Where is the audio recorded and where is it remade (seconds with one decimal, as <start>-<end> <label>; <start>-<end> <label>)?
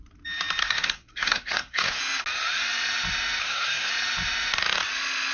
0.0-0.6 recorded; 0.6-2.0 remade; 2.0-3.4 recorded; 3.4-3.9 remade; 3.9-5.3 recorded